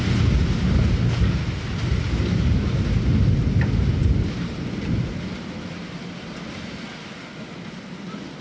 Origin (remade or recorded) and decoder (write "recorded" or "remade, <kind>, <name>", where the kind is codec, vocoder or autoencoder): recorded